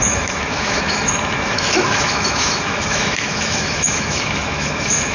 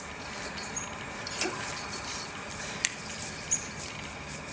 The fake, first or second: first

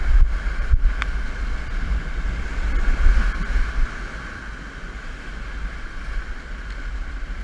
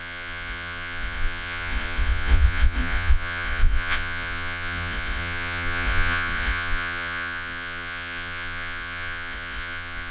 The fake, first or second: second